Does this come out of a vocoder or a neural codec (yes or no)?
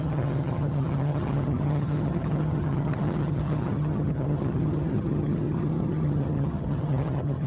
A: yes